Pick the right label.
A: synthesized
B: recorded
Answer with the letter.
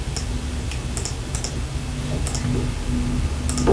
B